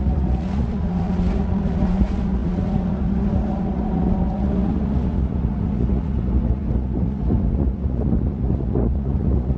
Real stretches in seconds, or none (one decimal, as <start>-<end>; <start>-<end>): none